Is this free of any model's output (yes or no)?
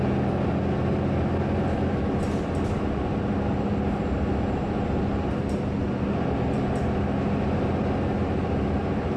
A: yes